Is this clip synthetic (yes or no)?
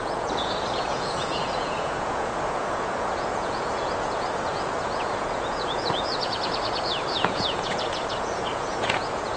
yes